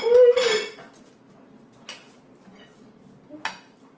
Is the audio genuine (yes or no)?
yes